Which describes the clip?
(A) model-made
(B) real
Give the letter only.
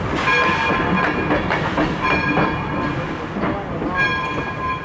B